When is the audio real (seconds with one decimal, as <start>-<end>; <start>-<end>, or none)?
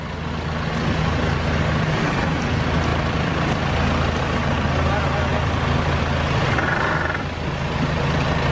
0.0-2.9; 3.6-8.5